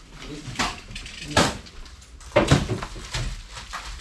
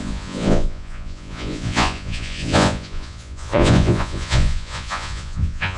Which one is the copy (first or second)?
second